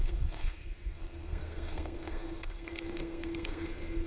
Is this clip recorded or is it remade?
remade